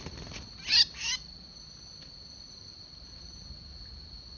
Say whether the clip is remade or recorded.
recorded